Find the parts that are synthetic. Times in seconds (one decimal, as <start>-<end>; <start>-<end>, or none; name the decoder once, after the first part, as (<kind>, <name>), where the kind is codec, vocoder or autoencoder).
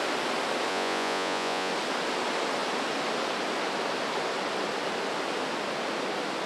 0.7-1.7 (vocoder, Vocos)